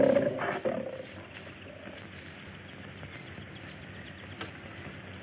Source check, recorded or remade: recorded